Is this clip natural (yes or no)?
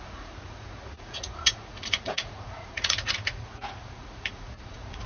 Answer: no